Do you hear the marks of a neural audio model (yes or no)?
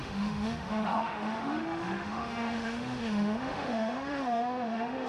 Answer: yes